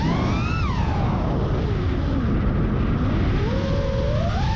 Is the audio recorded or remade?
recorded